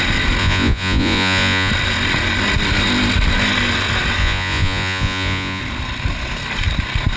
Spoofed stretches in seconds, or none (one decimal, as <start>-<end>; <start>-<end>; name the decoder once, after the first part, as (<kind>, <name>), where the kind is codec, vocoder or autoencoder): 0.4-1.7 (vocoder, Vocos); 4.2-5.6